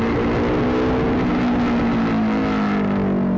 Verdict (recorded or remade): recorded